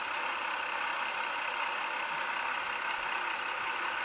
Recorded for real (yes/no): yes